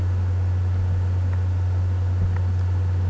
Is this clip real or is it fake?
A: real